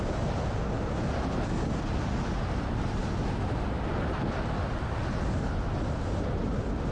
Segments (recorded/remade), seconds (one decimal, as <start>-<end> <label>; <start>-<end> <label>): 0.0-6.9 recorded